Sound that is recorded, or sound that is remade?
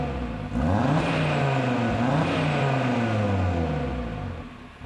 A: recorded